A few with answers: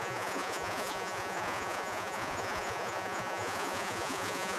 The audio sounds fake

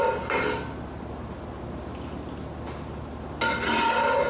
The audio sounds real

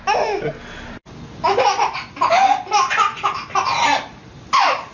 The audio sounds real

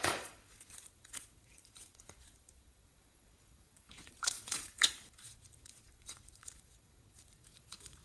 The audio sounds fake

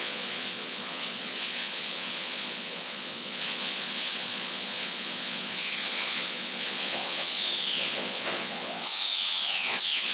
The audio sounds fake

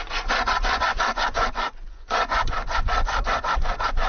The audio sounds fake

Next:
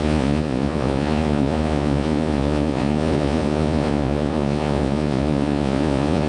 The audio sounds fake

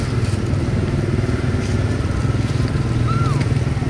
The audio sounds real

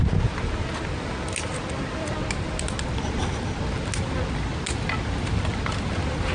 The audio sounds real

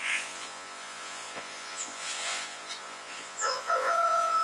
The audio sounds fake